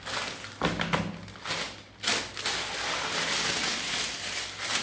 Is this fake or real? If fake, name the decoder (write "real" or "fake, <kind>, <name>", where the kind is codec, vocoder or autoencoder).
real